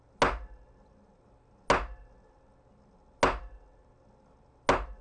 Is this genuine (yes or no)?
yes